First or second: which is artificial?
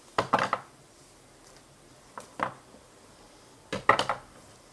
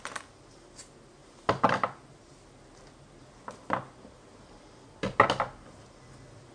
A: first